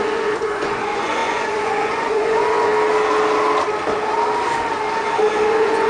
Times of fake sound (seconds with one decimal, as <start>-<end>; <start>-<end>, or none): 0.0-2.7; 5.5-5.9

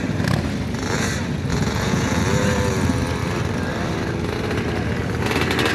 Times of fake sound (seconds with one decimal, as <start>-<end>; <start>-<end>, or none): 1.5-2.2

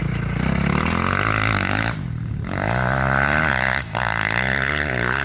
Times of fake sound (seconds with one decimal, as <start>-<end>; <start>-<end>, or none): none

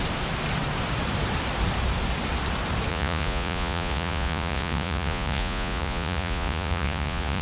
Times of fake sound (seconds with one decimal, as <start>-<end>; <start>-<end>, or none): 2.9-7.4

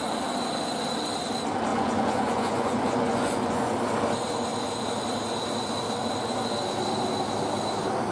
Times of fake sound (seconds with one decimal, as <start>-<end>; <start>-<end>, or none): 1.7-3.7